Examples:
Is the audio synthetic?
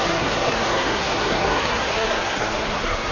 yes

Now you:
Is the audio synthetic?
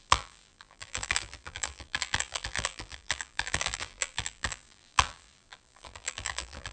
yes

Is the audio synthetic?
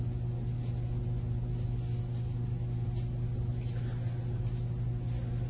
no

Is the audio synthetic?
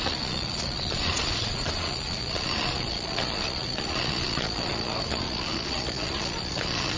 yes